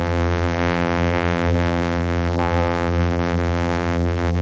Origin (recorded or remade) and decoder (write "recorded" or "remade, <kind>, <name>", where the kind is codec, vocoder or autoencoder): remade, vocoder, BigVGAN v2